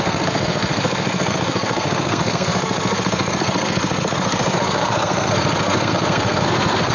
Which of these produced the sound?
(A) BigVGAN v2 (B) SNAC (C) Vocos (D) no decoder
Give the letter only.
B